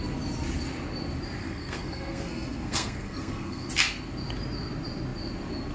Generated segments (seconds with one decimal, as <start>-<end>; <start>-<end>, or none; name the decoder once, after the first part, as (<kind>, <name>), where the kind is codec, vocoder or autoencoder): 1.4-3.7 (codec, SNAC)